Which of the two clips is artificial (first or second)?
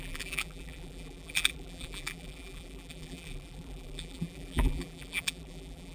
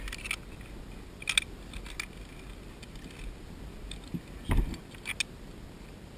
first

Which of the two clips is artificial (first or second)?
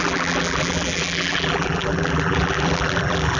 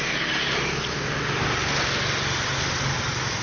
first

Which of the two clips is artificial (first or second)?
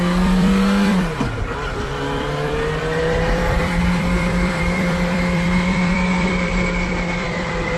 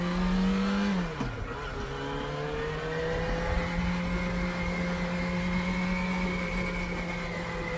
first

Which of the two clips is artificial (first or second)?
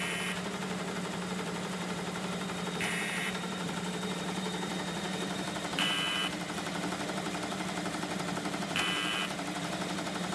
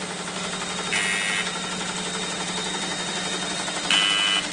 first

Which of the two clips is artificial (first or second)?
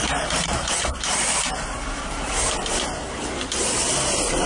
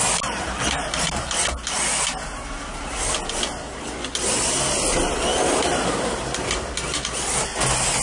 first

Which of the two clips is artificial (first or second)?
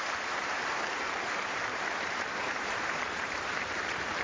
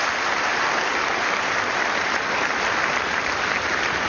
first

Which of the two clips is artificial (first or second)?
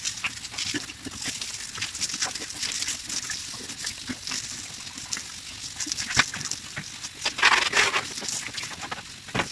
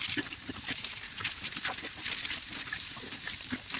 second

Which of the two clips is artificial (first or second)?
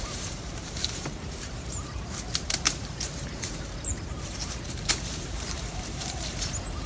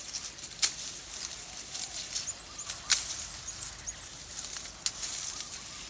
first